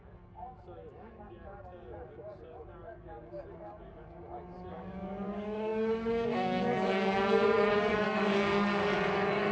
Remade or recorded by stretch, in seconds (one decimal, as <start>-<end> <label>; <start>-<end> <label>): 0.0-9.5 remade